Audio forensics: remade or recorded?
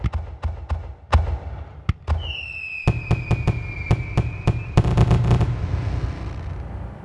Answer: recorded